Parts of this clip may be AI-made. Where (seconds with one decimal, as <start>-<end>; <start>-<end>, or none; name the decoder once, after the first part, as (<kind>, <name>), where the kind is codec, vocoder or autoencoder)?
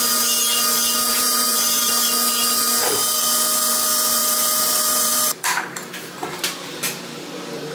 1.1-1.9 (vocoder, BigVGAN v2); 4.2-6.4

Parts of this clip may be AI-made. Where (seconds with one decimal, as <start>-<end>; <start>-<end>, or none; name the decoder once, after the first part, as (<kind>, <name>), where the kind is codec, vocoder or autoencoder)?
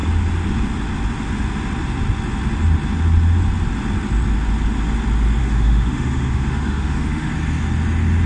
5.4-7.3 (autoencoder, DAC-VAE)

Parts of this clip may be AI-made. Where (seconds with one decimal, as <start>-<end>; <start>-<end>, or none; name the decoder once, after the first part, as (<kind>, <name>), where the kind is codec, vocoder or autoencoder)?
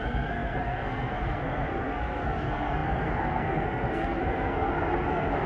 0.0-5.5 (codec, SNAC)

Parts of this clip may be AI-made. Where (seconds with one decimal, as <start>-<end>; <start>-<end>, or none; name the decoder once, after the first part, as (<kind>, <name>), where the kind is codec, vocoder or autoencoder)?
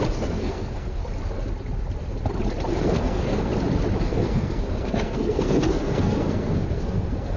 0.0-1.0 (codec, SNAC); 2.7-3.5; 4.0-7.4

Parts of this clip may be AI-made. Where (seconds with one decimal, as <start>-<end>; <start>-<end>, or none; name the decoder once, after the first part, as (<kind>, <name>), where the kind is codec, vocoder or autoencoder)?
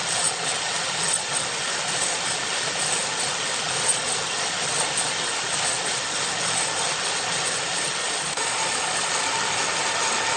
8.0-9.1 (vocoder, Vocos)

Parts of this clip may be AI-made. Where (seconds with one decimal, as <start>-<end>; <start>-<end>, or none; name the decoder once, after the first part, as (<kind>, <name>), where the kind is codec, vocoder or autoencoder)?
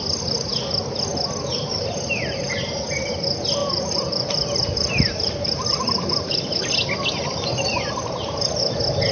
1.7-2.5 (vocoder, BigVGAN v2); 3.6-6.6; 7.7-8.6